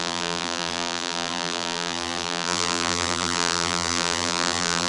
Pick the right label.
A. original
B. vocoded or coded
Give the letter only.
B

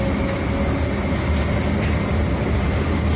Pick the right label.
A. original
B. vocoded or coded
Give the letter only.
A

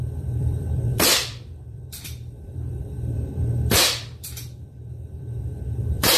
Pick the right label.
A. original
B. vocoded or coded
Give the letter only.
B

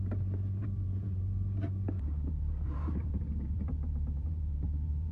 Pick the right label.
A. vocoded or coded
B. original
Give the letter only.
A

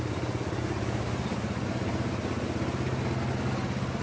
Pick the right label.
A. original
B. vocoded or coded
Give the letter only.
A